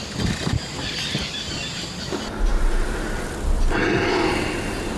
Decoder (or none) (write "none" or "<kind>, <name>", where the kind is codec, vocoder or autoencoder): none